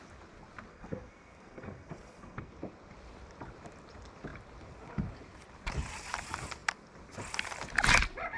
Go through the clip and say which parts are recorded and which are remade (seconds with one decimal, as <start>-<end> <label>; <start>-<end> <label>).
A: 0.0-0.7 recorded; 0.7-2.5 remade; 2.5-8.4 recorded